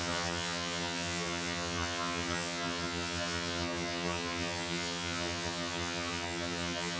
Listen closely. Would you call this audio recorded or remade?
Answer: remade